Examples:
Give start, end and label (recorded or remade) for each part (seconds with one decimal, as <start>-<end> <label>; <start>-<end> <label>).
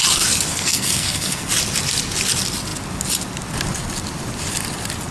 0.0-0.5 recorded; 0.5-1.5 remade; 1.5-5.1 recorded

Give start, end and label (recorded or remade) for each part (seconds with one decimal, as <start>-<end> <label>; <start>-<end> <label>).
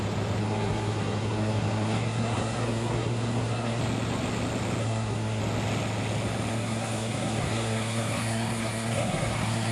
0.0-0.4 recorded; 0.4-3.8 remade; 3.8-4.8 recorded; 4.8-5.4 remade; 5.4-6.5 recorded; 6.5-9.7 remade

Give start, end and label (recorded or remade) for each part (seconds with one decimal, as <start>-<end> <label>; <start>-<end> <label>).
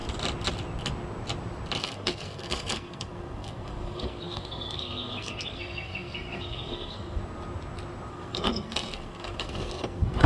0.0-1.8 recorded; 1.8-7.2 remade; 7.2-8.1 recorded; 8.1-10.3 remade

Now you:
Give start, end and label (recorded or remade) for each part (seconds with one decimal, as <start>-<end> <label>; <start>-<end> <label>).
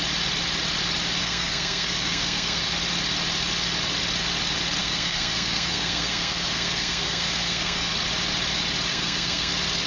0.0-1.2 recorded; 1.2-2.6 remade; 2.6-4.8 recorded; 4.8-7.9 remade; 7.9-8.9 recorded; 8.9-9.5 remade; 9.5-9.9 recorded